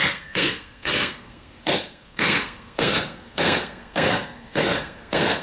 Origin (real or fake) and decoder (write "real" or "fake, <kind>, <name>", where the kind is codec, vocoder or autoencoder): fake, codec, SNAC